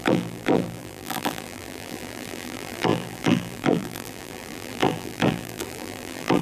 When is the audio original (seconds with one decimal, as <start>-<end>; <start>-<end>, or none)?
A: none

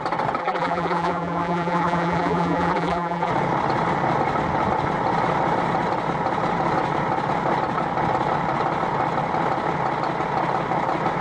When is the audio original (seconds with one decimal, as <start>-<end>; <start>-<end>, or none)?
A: 0.0-0.4; 3.3-11.2

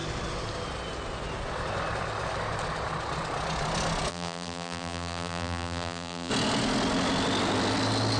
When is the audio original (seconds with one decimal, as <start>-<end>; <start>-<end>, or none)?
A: 0.0-4.1; 6.3-8.2

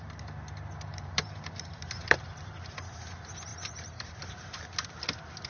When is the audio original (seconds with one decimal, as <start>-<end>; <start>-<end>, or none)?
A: 0.0-0.9; 3.0-3.5; 4.6-5.5

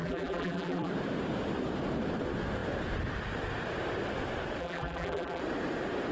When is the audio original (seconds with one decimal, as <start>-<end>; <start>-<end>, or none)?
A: 0.9-4.6; 5.4-6.1

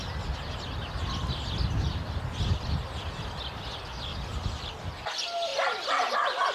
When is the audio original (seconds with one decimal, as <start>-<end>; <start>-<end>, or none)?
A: 0.0-4.1; 4.7-5.5

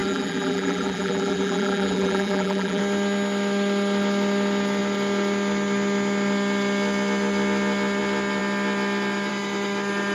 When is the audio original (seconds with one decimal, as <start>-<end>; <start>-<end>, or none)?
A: 2.8-10.1

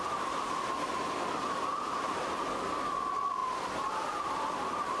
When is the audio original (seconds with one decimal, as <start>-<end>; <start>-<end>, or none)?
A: 0.0-5.0